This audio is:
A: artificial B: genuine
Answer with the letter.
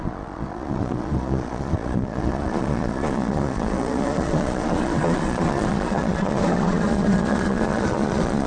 A